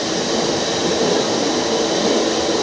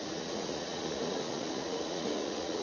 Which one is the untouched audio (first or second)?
first